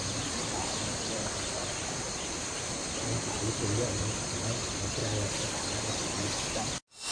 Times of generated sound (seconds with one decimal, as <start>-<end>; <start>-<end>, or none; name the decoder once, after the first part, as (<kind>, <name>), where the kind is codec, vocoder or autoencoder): none